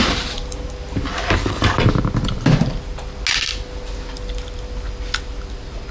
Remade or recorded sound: recorded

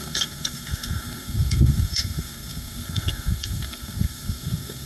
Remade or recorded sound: remade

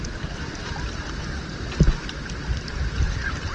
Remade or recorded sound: recorded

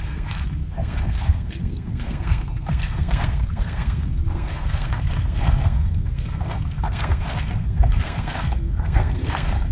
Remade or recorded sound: remade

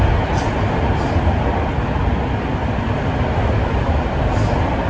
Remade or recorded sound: recorded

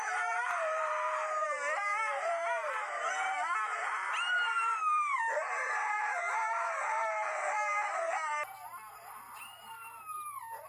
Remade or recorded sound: remade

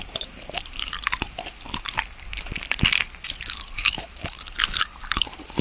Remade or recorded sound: remade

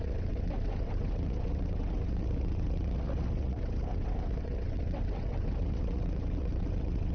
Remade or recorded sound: remade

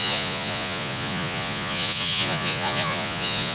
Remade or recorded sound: remade